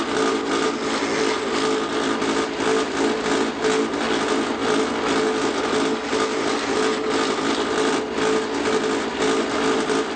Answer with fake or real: real